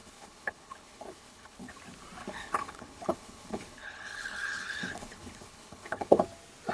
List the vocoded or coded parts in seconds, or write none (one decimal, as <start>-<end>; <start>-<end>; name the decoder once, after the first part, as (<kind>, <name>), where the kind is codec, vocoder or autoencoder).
0.0-1.7 (codec, HILCodec); 2.2-6.2